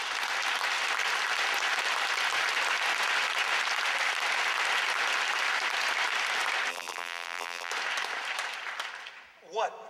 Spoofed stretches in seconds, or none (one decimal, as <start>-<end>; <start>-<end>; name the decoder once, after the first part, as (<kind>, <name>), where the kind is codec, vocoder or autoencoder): 6.7-7.7 (vocoder, BigVGAN v2)